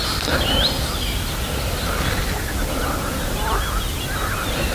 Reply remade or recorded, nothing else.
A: recorded